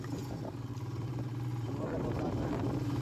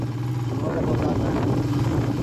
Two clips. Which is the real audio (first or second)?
second